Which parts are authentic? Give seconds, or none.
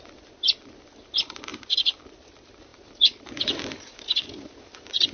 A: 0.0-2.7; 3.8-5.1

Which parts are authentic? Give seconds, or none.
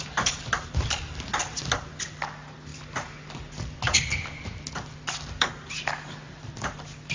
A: 0.0-7.1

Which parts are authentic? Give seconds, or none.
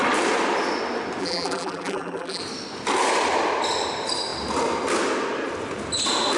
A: 0.0-1.2; 2.4-6.4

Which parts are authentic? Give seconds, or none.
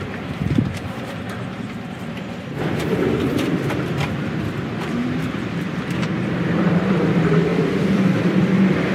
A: none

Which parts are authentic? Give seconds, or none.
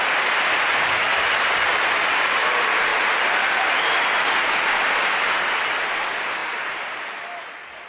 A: 0.0-7.9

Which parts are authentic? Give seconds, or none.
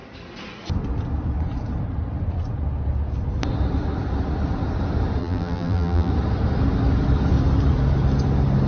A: 0.0-5.2; 6.1-8.7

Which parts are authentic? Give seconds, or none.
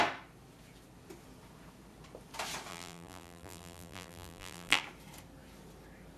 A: 0.0-2.7; 4.8-6.2